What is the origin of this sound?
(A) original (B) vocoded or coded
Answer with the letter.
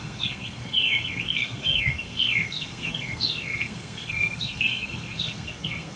B